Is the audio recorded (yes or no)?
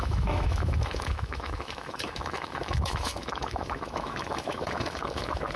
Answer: no